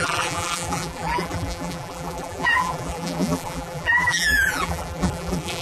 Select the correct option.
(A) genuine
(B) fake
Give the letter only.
B